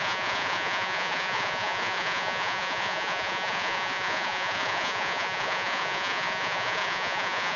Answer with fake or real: fake